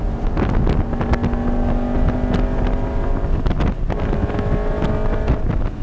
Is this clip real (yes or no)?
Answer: yes